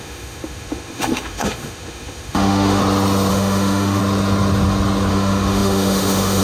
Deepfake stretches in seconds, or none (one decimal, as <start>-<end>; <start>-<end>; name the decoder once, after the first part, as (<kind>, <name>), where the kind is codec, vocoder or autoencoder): 0.0-2.8 (autoencoder, DAC-VAE); 3.3-4.0; 5.1-6.4